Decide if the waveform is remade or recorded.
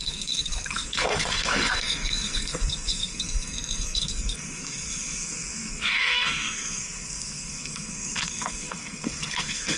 remade